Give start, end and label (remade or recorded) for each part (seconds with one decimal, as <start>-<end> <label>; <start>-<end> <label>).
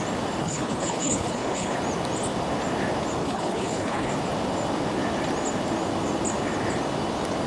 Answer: 0.0-0.4 recorded; 0.4-1.8 remade; 1.8-3.2 recorded; 3.2-4.1 remade; 4.1-7.5 recorded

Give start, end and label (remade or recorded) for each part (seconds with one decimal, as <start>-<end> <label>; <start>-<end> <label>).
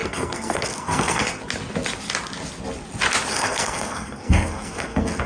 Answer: 0.0-1.4 remade; 1.4-3.3 recorded; 3.3-5.3 remade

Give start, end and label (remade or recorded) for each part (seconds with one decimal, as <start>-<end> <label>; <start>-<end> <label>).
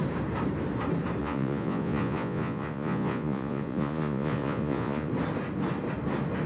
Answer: 0.0-1.2 recorded; 1.2-5.1 remade; 5.1-6.5 recorded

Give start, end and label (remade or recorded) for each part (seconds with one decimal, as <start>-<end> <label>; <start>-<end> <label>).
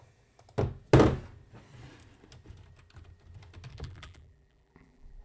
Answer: 0.0-3.7 recorded; 3.7-5.2 remade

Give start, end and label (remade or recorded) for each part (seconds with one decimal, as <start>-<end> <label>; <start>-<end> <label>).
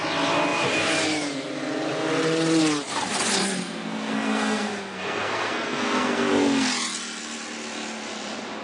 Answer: 0.0-3.4 recorded; 3.4-6.7 remade; 6.7-8.6 recorded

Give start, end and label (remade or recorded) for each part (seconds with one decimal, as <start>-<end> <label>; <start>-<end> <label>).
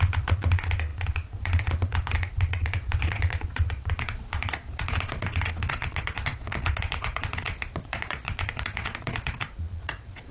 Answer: 0.0-10.3 remade